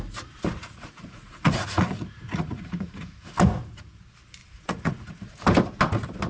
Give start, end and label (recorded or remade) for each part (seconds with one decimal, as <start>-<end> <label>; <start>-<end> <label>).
0.0-0.6 recorded; 0.6-4.0 remade; 4.0-4.4 recorded; 4.4-5.4 remade; 5.4-6.3 recorded